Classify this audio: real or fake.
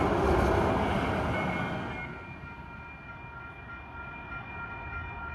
real